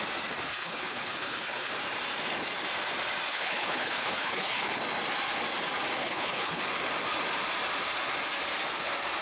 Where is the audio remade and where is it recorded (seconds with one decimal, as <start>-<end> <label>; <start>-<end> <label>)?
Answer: 0.0-0.5 recorded; 0.5-1.7 remade; 1.7-3.3 recorded; 3.3-4.8 remade; 4.8-6.0 recorded; 6.0-6.6 remade; 6.6-9.2 recorded